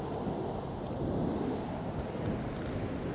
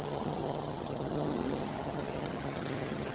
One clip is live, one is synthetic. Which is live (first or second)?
first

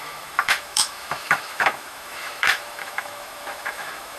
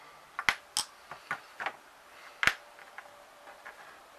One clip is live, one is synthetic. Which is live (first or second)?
second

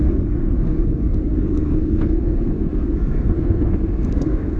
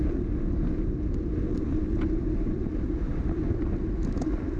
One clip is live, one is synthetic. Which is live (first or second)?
second